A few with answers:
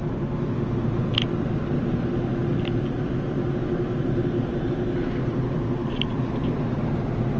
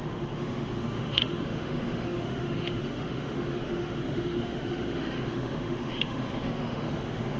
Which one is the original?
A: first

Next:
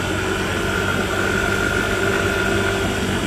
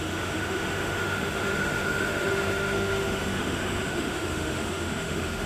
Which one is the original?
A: first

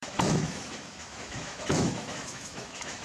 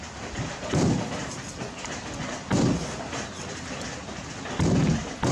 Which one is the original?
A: second